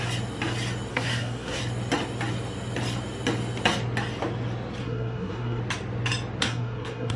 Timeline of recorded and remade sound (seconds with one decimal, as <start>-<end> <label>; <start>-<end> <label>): 0.0-0.9 recorded; 0.9-1.6 remade; 1.6-4.8 recorded; 4.8-5.6 remade; 5.6-6.4 recorded; 6.4-7.2 remade